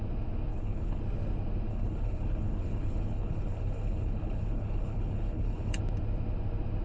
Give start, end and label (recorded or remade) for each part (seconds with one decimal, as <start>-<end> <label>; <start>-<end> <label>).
0.0-0.5 recorded; 0.5-1.0 remade; 1.0-1.7 recorded; 1.7-5.8 remade; 5.8-6.8 recorded